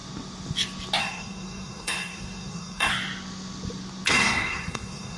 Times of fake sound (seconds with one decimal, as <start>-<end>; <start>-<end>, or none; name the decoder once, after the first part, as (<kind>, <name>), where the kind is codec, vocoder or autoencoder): 1.0-2.9 (codec, SNAC); 4.1-5.2